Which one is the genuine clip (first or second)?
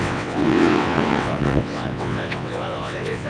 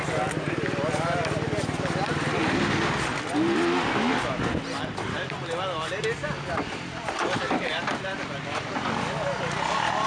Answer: second